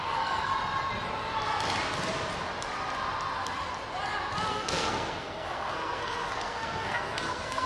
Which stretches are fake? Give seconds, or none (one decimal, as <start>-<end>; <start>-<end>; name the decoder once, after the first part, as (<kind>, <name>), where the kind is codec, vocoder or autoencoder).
0.0-0.5 (codec, SNAC); 4.5-7.7